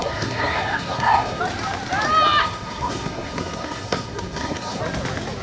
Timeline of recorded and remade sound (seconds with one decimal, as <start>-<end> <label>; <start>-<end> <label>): 0.0-1.4 remade; 1.4-2.4 recorded; 2.4-4.8 remade; 4.8-5.4 recorded